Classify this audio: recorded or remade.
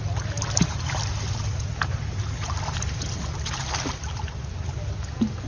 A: recorded